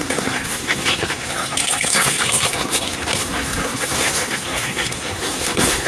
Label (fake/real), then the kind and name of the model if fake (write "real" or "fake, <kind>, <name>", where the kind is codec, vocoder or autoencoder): fake, codec, SNAC